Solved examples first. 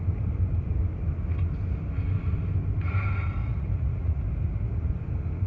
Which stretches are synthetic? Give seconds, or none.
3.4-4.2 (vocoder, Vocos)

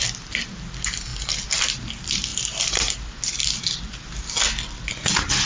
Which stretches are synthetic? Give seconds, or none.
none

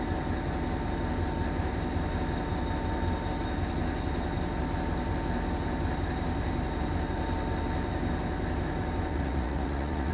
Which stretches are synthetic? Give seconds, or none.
9.1-10.1 (vocoder, Vocos)

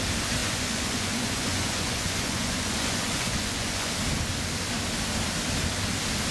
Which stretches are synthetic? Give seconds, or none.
0.4-3.9 (vocoder, Vocos)